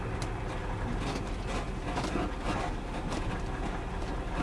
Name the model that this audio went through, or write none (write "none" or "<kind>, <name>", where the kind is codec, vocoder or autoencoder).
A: none